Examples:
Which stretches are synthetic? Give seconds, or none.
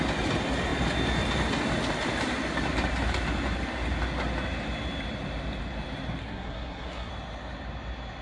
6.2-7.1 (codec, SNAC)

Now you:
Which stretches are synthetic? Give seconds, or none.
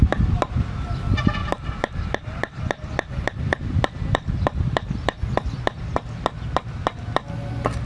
1.4-3.4 (vocoder, BigVGAN v2)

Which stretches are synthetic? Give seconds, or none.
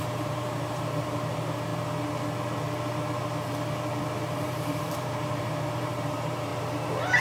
0.0-1.7 (vocoder, BigVGAN v2); 4.0-6.5